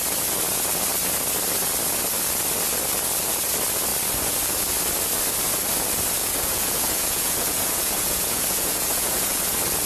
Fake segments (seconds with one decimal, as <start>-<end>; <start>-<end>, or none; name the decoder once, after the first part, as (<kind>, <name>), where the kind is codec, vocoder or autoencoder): 6.2-9.4 (vocoder, Vocos)